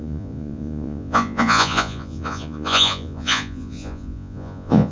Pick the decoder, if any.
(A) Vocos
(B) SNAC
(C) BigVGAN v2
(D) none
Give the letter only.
A